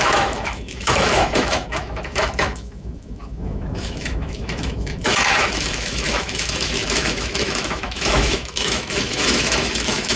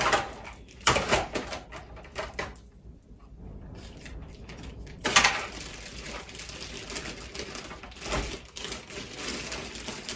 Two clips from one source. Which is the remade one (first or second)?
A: first